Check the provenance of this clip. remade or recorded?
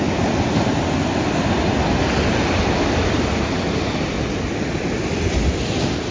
recorded